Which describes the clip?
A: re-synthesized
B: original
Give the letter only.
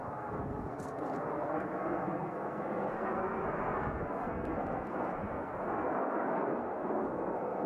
A